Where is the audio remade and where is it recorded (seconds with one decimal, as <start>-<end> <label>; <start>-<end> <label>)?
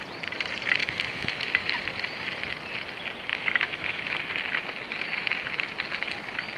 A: 0.0-0.8 recorded; 0.8-1.5 remade; 1.5-3.3 recorded; 3.3-4.2 remade; 4.2-6.6 recorded